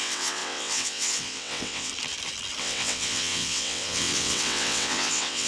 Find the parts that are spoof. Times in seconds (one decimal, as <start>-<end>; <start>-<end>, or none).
0.0-1.9; 2.6-5.5